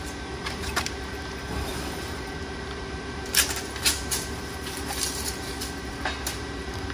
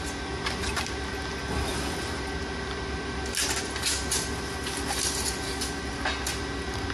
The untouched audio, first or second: second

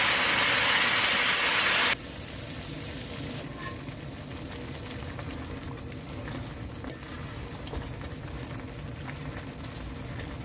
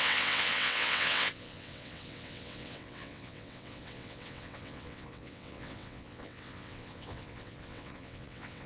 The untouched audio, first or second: first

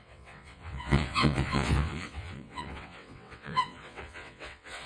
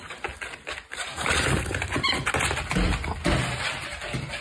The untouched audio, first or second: second